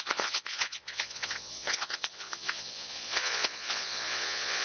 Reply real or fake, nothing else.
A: fake